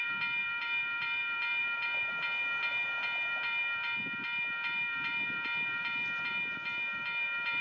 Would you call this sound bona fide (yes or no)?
no